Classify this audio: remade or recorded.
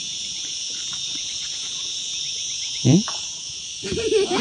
remade